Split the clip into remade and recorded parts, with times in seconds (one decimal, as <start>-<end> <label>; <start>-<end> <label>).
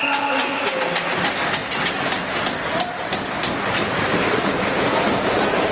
0.0-5.7 recorded